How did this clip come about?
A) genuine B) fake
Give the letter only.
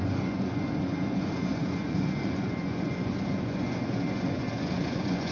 B